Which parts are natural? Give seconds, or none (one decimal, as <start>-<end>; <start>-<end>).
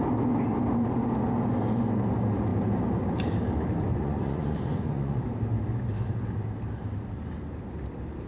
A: 0.0-3.9; 5.2-8.3